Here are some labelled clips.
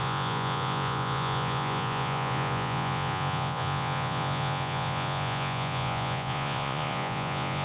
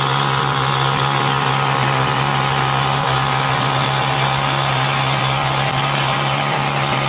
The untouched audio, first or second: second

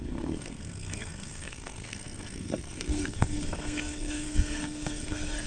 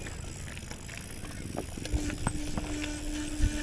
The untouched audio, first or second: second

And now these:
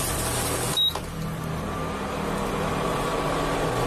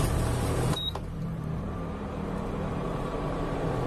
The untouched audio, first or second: first